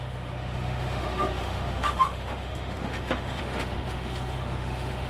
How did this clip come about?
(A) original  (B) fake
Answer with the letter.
B